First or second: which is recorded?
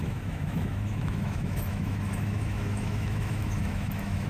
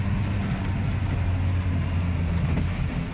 second